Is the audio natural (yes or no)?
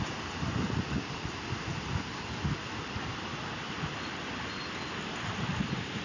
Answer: yes